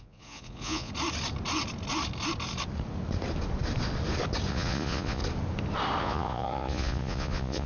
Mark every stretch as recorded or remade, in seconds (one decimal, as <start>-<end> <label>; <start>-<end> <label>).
0.0-0.9 remade; 0.9-4.5 recorded; 4.5-5.2 remade; 5.2-6.0 recorded; 6.0-7.7 remade